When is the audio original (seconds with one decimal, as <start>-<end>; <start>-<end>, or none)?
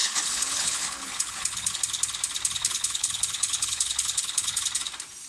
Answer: 1.7-2.6; 4.6-5.3